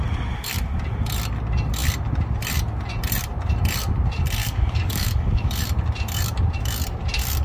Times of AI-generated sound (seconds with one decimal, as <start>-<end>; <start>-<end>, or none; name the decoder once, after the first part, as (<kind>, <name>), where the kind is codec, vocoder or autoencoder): 4.4-5.5 (codec, DAC)